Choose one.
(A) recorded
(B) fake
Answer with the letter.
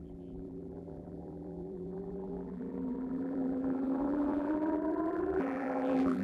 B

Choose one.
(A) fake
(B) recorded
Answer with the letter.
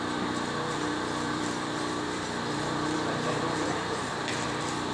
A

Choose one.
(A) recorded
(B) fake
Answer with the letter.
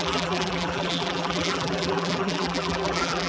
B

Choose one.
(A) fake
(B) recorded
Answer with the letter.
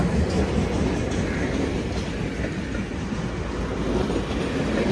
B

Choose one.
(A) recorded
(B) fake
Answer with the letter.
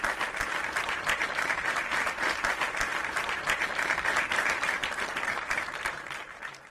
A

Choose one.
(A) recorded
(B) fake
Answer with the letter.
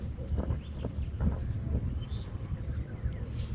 A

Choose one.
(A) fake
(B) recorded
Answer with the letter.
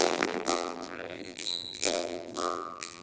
A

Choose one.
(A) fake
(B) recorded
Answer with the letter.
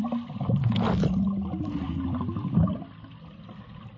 B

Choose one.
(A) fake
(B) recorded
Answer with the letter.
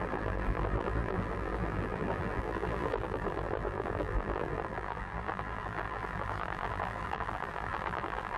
A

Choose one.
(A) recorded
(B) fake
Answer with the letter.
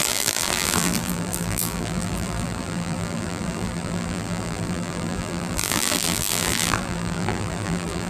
B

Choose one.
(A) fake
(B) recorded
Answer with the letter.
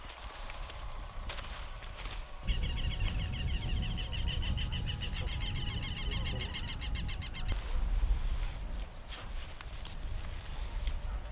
B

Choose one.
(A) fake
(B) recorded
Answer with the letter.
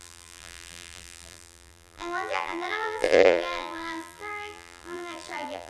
A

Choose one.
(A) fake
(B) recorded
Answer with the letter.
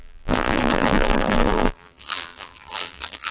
A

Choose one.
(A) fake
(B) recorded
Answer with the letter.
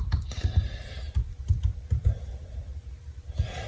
A